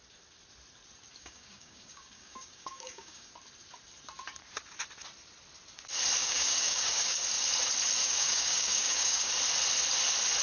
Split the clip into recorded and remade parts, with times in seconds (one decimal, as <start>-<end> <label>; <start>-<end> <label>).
0.0-1.2 recorded; 1.2-3.3 remade; 3.3-6.2 recorded; 6.2-7.2 remade; 7.2-8.0 recorded; 8.0-9.3 remade; 9.3-10.4 recorded